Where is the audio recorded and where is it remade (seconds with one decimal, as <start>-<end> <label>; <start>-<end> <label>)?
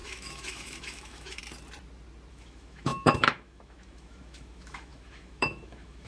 0.0-1.4 remade; 1.4-2.3 recorded; 2.3-6.1 remade